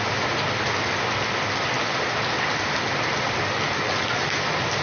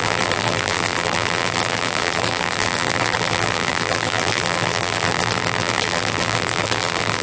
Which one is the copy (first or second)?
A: second